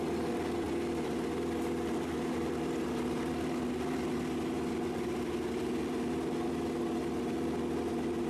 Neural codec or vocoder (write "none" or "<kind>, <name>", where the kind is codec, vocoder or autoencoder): none